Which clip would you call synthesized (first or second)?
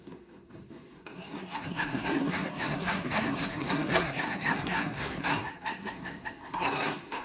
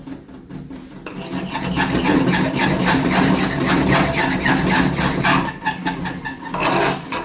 first